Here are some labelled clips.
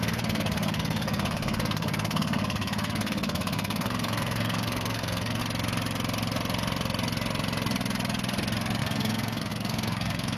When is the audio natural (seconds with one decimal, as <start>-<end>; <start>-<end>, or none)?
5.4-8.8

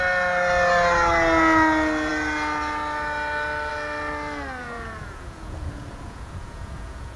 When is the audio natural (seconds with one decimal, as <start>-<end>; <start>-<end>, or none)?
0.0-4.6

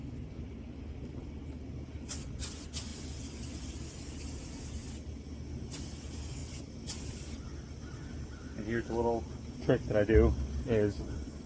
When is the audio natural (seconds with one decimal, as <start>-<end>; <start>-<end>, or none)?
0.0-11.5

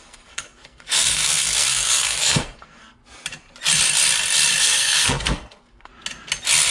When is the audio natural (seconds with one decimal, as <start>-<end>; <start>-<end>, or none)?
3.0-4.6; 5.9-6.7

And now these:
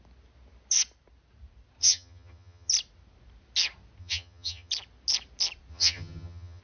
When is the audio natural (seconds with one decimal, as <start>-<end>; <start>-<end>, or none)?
0.0-1.8; 2.7-4.0; 4.7-5.7